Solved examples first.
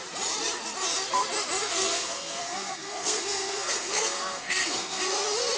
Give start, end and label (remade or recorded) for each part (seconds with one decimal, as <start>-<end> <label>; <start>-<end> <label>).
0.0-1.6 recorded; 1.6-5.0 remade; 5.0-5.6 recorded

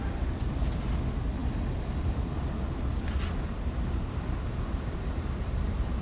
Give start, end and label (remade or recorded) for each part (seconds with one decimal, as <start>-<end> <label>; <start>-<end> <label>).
0.0-6.0 recorded

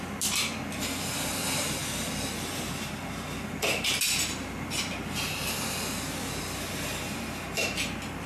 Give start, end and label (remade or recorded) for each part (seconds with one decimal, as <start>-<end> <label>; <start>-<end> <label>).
0.0-8.3 recorded

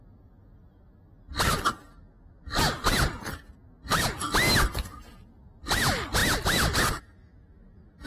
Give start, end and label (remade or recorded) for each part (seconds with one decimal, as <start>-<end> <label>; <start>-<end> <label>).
0.0-6.2 recorded; 6.2-7.0 remade; 7.0-8.1 recorded